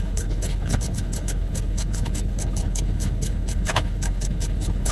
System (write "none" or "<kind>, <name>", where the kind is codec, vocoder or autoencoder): codec, HILCodec